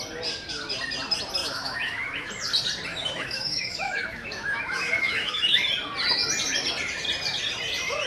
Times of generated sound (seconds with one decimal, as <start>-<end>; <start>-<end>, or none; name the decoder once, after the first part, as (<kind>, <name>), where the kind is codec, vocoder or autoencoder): 1.4-2.3 (autoencoder, DAC-VAE); 2.9-5.6